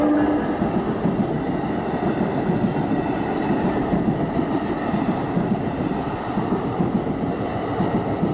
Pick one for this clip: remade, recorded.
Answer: recorded